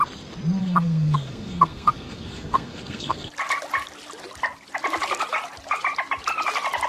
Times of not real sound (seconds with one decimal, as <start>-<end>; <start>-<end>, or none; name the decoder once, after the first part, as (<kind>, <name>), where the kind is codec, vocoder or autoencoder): 0.6-3.3 (codec, SNAC)